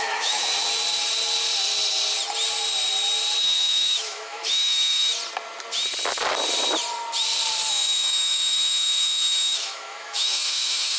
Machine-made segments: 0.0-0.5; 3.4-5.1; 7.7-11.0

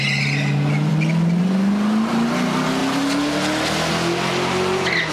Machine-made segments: none

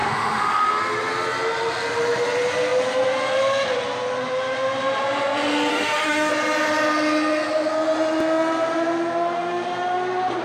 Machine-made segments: 0.0-0.7; 5.7-6.3

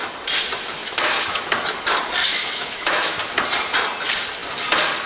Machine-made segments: 0.8-1.4; 2.2-3.2

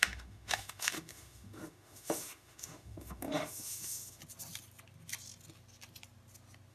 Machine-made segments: 0.0-4.2

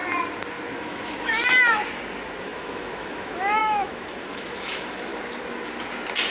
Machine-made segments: 0.8-1.8; 2.4-5.1

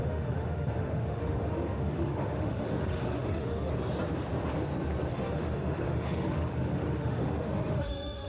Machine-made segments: 0.0-3.7; 5.1-8.3

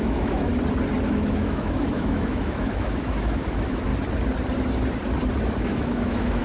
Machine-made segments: 0.0-0.5; 1.1-3.9; 5.6-6.4